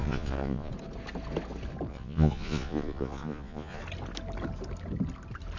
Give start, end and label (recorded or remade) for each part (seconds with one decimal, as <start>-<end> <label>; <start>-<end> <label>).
0.0-0.7 remade; 0.7-1.9 recorded; 1.9-3.8 remade; 3.8-5.6 recorded